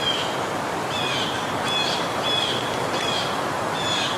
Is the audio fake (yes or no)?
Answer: no